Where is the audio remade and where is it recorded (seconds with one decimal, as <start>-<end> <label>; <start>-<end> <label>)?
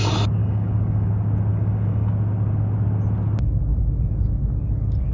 0.0-0.4 recorded; 0.4-1.1 remade; 1.1-1.5 recorded; 1.5-2.1 remade; 2.1-5.1 recorded